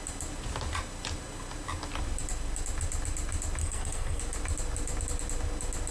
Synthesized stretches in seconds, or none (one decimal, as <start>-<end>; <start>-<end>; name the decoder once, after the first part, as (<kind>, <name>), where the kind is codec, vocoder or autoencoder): 3.6-4.2 (codec, SNAC)